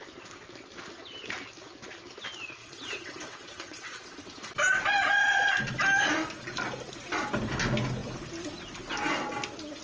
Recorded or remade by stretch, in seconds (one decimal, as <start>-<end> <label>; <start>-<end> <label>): 0.0-2.6 recorded; 2.6-4.4 remade; 4.4-9.8 recorded

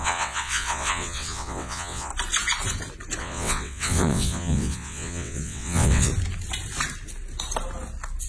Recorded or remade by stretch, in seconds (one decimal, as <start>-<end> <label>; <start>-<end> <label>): 0.0-2.1 remade; 2.1-3.2 recorded; 3.2-6.1 remade; 6.1-8.3 recorded